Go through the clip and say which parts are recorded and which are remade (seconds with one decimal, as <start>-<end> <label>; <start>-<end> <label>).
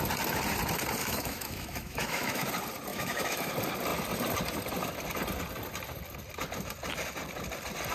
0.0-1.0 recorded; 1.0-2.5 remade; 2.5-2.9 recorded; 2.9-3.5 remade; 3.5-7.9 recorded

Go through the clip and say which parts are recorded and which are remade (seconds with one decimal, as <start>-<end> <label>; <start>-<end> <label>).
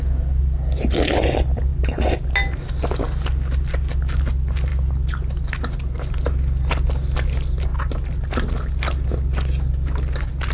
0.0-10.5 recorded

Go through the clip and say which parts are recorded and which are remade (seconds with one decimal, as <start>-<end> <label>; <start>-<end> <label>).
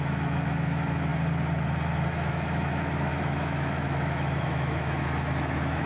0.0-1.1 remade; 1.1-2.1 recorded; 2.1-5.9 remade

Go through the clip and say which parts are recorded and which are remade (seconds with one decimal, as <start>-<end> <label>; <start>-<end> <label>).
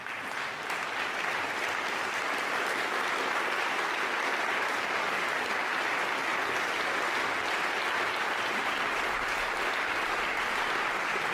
0.0-11.3 recorded